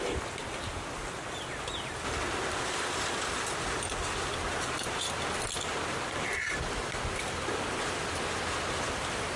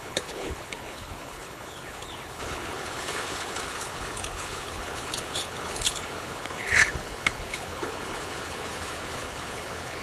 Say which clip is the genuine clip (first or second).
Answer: first